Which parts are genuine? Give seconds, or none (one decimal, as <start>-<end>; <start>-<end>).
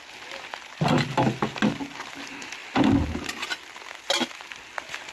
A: 0.0-5.1